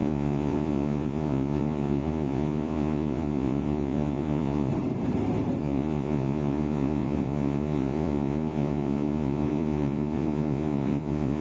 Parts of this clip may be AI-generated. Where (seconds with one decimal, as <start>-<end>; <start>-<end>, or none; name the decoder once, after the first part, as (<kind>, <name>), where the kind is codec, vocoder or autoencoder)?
0.0-4.7 (vocoder, Vocos); 5.6-11.4